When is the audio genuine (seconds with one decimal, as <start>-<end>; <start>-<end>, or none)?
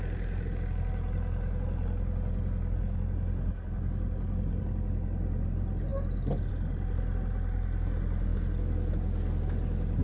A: 0.0-10.0